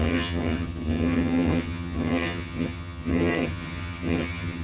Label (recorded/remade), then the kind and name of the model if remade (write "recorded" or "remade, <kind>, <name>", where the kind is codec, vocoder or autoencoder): remade, vocoder, HiFi-GAN